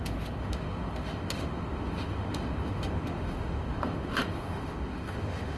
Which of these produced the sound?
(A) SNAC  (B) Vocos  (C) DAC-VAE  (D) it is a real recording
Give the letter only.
C